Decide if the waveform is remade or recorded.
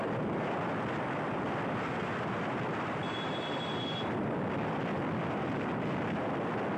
recorded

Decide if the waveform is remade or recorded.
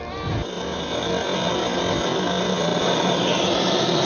recorded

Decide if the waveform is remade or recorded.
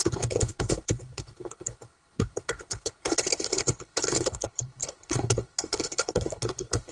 remade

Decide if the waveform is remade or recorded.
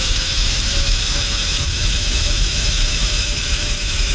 remade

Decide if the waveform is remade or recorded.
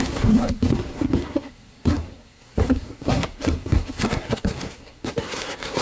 remade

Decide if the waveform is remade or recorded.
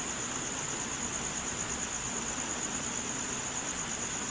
recorded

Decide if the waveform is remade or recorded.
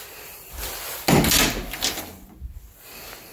recorded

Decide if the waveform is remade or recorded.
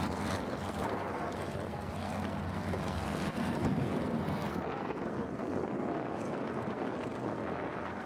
remade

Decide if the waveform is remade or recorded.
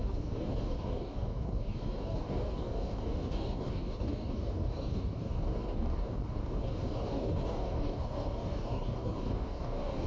remade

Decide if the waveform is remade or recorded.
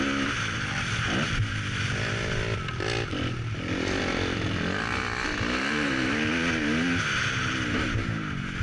recorded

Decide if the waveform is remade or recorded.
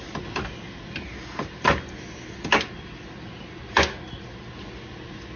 recorded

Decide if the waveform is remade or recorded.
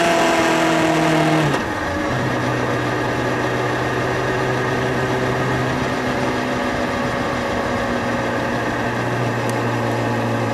recorded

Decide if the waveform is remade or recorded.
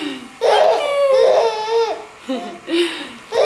recorded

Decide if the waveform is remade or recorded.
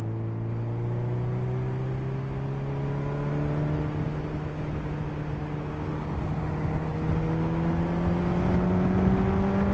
recorded